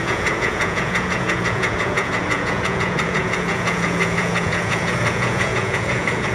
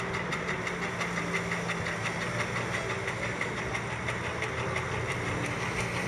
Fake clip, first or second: first